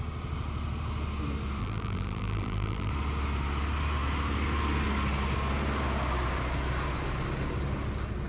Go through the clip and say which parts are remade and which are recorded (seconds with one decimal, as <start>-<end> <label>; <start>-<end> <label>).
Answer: 0.0-1.6 recorded; 1.6-2.9 remade; 2.9-8.3 recorded